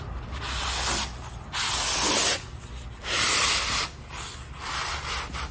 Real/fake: real